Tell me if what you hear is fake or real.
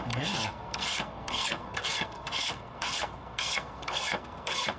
fake